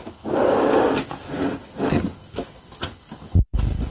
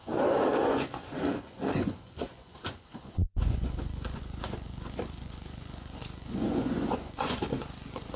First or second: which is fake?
second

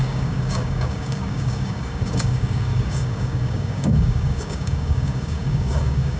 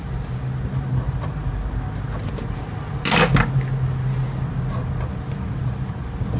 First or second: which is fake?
first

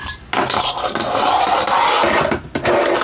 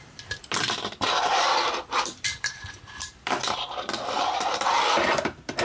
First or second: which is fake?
second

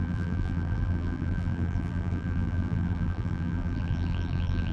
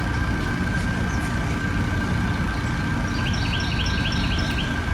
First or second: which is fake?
first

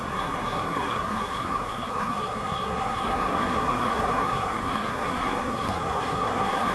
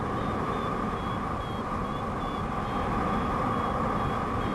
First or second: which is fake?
first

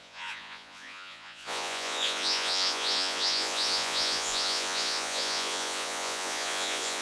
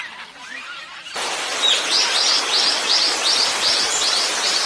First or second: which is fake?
first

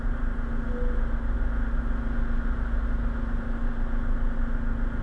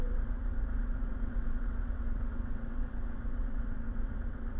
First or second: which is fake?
second